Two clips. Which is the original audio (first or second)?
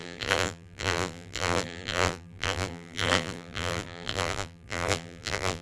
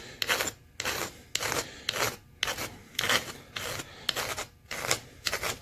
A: second